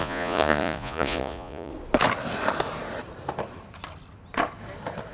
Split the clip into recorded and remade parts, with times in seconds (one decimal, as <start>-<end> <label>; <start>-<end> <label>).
0.0-1.7 remade; 1.7-5.1 recorded